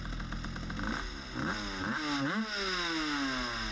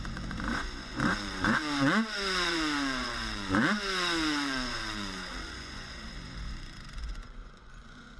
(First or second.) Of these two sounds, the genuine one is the first